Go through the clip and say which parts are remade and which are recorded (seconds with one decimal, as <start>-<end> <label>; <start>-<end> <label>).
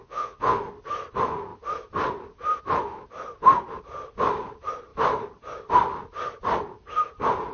0.0-0.6 remade; 0.6-7.5 recorded